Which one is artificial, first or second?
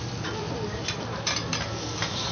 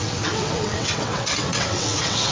second